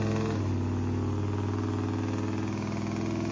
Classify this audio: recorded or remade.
recorded